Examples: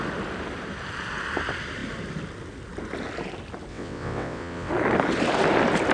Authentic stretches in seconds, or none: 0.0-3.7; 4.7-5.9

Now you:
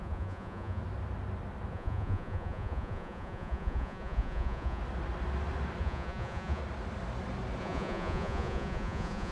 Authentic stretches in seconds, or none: 0.8-1.7; 4.8-5.8; 6.6-7.6

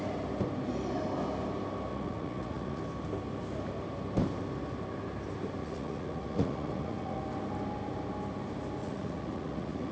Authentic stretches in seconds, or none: 0.0-1.9; 2.8-5.6; 7.2-8.8

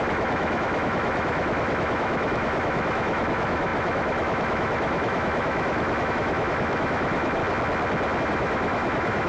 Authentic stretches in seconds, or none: 7.4-8.2

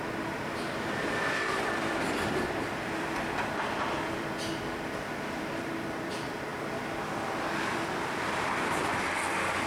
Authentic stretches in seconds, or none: 6.5-7.0